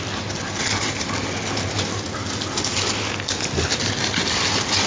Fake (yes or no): no